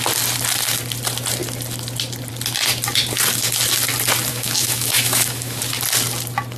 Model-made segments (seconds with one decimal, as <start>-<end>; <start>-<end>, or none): 4.3-5.6